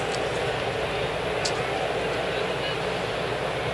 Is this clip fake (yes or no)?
no